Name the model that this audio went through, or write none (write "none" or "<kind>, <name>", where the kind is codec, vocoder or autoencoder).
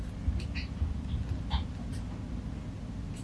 none